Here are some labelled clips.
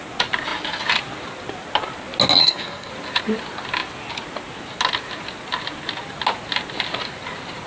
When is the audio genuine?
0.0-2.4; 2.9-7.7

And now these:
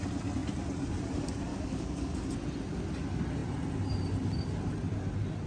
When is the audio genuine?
0.0-1.5; 2.2-5.5

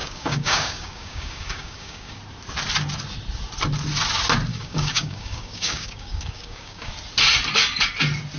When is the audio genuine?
2.2-4.5; 6.9-8.4

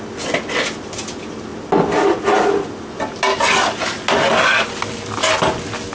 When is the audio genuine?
0.0-5.9

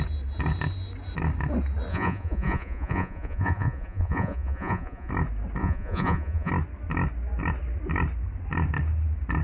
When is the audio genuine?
0.0-1.9; 5.1-5.6; 6.5-9.4

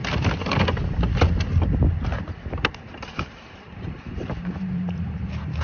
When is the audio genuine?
0.0-2.9